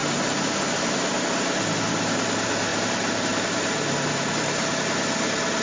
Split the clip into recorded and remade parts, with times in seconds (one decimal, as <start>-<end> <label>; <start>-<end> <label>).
0.0-5.6 remade